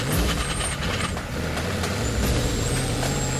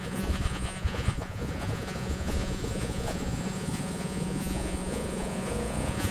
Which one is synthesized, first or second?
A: second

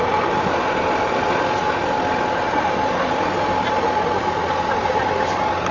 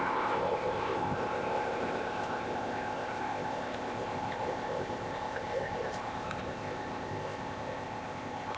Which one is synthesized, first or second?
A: second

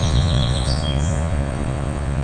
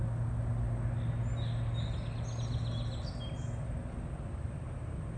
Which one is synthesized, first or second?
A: first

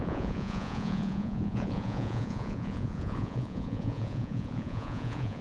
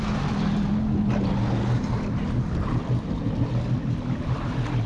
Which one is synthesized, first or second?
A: first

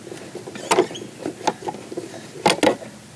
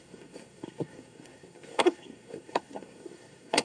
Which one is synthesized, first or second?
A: second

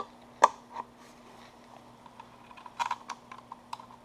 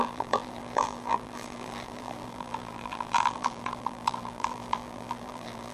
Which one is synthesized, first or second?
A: second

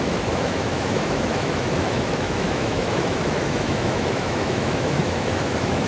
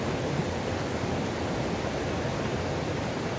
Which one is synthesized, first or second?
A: first